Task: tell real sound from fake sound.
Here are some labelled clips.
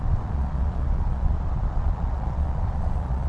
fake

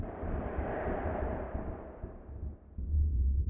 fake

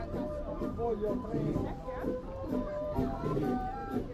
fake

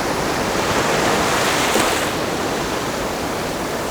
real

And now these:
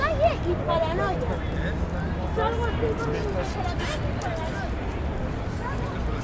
real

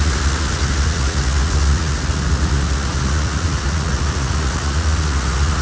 fake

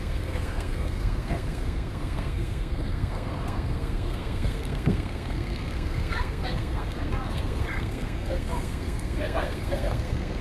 fake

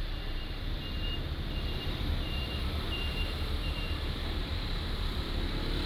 fake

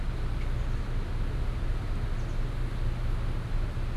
real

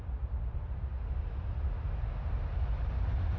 real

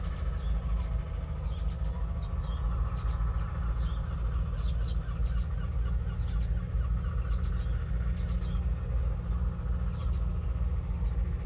real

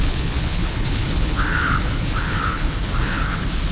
fake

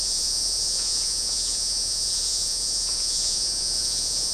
fake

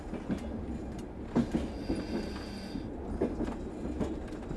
real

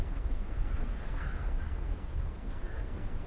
fake